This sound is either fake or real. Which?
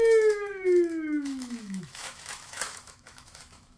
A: fake